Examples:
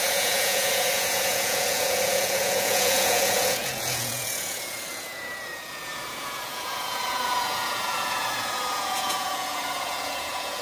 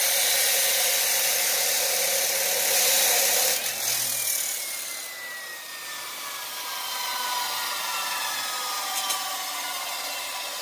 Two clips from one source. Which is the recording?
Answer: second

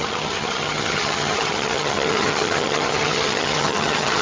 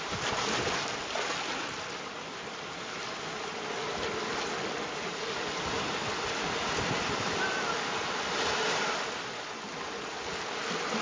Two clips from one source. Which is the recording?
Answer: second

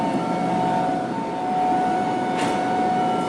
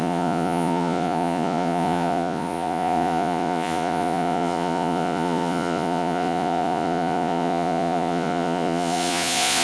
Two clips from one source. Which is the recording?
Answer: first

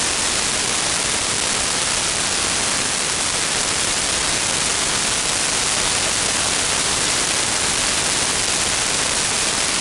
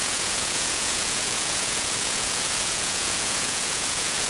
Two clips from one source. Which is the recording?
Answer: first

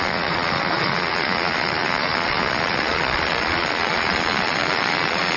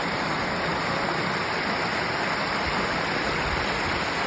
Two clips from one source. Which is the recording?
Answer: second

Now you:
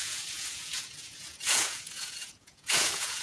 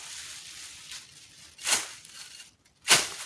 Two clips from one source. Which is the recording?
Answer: second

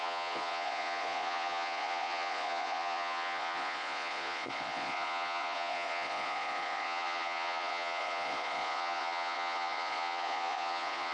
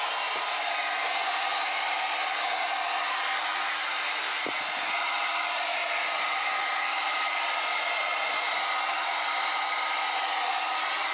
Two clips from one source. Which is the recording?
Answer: second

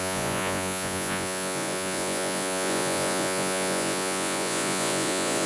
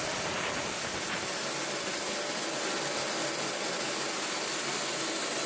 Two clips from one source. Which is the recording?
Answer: second